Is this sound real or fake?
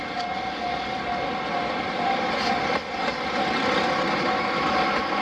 real